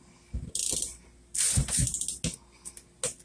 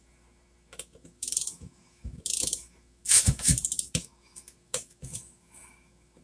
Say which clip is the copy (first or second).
second